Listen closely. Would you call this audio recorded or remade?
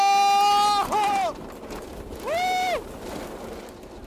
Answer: recorded